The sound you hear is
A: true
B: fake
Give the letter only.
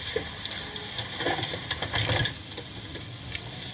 A